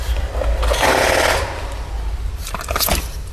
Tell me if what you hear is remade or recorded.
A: recorded